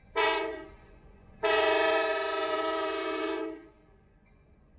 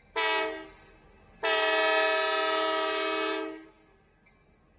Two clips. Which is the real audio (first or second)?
second